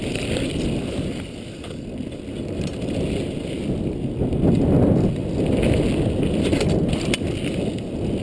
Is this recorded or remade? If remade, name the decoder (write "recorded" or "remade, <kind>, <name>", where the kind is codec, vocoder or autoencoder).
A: recorded